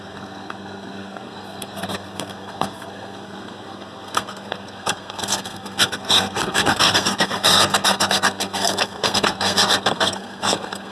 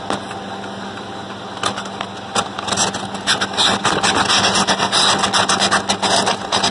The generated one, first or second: first